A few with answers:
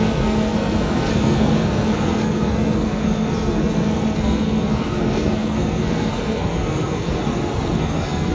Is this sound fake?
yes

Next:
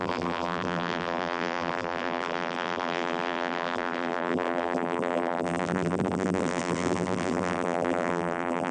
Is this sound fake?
yes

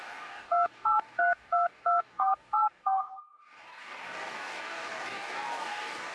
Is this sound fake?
yes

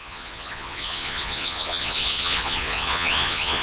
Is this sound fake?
yes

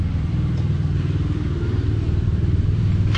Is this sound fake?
yes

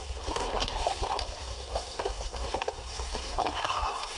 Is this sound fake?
yes